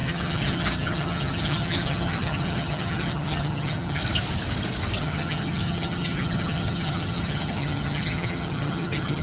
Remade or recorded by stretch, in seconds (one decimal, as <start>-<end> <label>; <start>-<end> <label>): 0.0-4.0 remade; 4.0-5.0 recorded; 5.0-9.2 remade